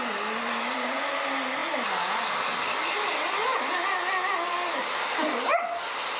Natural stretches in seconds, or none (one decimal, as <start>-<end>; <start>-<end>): 0.0-6.2